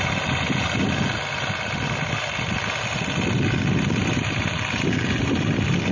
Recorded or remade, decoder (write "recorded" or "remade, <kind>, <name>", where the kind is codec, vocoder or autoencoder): recorded